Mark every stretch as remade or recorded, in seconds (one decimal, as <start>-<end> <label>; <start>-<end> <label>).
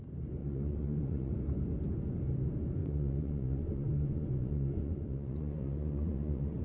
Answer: 0.0-0.4 recorded; 0.4-1.3 remade; 1.3-2.8 recorded; 2.8-6.6 remade